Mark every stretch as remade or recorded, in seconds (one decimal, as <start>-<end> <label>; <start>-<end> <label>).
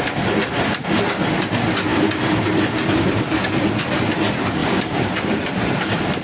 0.0-6.2 recorded